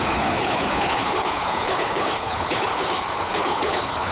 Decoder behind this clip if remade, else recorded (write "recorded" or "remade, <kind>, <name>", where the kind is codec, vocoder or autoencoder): remade, codec, HILCodec